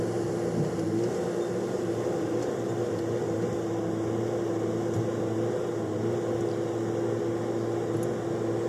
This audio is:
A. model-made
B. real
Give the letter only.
B